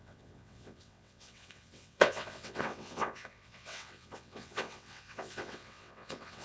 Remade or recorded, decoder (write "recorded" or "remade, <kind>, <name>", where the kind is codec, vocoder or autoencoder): remade, vocoder, WaveNeXt